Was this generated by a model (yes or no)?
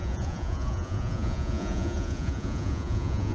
yes